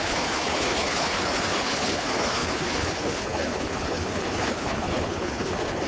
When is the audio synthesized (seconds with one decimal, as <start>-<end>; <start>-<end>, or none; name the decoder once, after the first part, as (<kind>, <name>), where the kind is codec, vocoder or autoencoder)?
0.0-5.9 (codec, HILCodec)